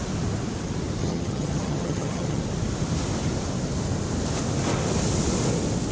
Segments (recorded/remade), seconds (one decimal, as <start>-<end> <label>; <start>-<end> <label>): 0.0-1.0 recorded; 1.0-2.4 remade; 2.4-5.9 recorded